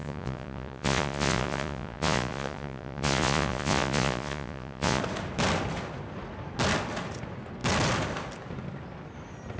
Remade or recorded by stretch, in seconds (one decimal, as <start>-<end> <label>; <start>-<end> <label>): 0.0-5.0 remade; 5.0-9.6 recorded